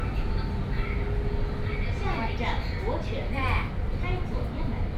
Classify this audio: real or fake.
real